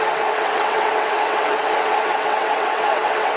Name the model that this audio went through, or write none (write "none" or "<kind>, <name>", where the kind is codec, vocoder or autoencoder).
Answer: vocoder, WaveNeXt